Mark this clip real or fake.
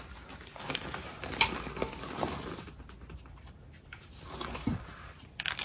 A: fake